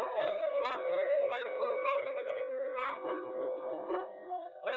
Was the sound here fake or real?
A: fake